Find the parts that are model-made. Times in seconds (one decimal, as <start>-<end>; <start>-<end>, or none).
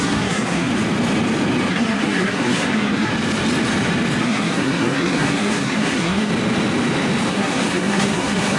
0.0-0.7; 1.7-3.1; 4.2-6.3; 7.3-8.6